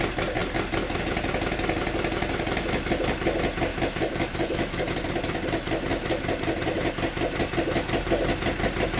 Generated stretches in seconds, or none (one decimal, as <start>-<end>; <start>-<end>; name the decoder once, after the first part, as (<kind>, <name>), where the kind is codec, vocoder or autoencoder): 3.7-4.9 (autoencoder, DAC-VAE)